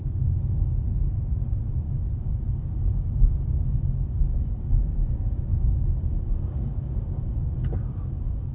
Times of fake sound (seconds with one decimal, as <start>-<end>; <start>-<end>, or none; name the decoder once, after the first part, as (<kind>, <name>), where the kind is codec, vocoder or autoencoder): 0.0-0.7 (codec, DAC); 1.8-8.5